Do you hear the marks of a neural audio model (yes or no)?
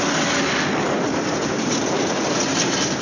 no